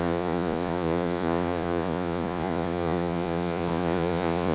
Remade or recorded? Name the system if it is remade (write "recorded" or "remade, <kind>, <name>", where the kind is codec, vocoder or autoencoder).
remade, vocoder, Vocos